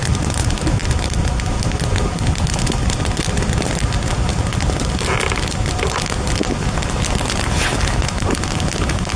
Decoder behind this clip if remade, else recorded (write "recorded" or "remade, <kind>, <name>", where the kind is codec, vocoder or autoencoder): recorded